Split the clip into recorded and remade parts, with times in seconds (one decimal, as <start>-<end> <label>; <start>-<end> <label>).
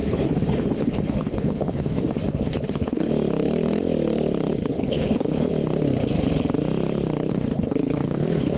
0.0-3.1 remade; 3.1-4.7 recorded; 4.7-5.5 remade; 5.5-7.3 recorded; 7.3-8.6 remade